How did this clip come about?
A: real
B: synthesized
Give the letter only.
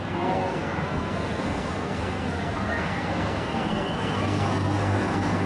B